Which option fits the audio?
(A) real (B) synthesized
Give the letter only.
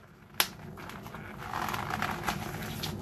A